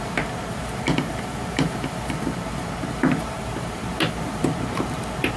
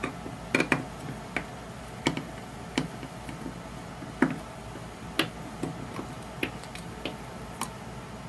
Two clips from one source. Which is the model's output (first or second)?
first